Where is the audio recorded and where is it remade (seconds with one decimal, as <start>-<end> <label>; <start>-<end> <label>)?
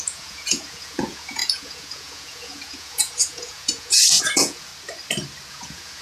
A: 0.0-4.7 remade; 4.7-5.5 recorded; 5.5-6.0 remade